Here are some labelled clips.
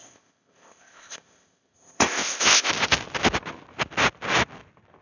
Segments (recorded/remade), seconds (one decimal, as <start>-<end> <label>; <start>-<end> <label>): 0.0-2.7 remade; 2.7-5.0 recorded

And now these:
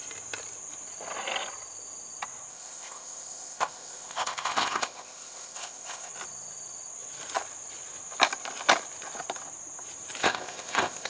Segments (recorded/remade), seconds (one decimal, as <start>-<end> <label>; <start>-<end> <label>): 0.0-2.5 recorded; 2.5-6.1 remade; 6.1-10.2 recorded; 10.2-11.1 remade

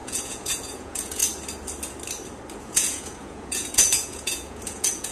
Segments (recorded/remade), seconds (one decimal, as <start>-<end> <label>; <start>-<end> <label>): 0.0-1.2 remade; 1.2-2.6 recorded; 2.6-5.1 remade

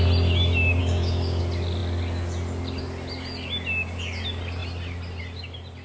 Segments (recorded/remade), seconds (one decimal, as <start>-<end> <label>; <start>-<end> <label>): 0.0-0.8 recorded; 0.8-1.4 remade; 1.4-5.8 recorded

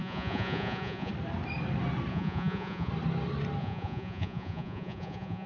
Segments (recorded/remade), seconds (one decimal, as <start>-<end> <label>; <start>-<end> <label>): 0.0-1.1 remade; 1.1-2.1 recorded; 2.1-2.9 remade; 2.9-3.6 recorded; 3.6-5.5 remade

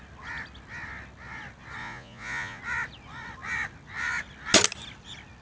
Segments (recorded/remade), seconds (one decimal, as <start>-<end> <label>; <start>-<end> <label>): 0.0-1.8 recorded; 1.8-2.6 remade; 2.6-5.4 recorded